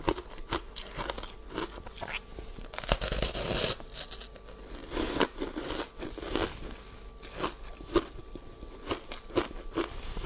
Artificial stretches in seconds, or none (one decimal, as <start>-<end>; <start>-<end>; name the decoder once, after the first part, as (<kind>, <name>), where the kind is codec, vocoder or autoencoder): none